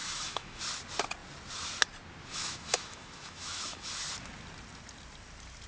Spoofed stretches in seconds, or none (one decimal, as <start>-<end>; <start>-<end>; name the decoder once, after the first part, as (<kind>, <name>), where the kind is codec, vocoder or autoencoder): 0.0-0.6 (autoencoder, DAC-VAE); 2.3-3.9